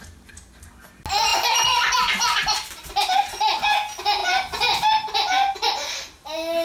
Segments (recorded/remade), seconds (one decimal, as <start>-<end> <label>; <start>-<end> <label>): 0.0-6.6 recorded